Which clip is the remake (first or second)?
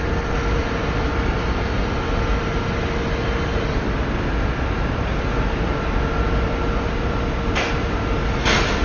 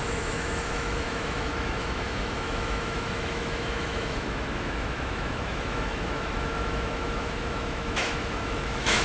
second